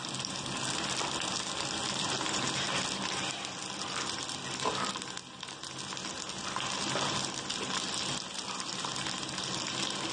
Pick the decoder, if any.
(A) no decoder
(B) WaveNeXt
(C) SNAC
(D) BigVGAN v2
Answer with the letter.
A